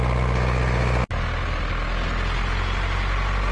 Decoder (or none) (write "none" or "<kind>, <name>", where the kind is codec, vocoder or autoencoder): none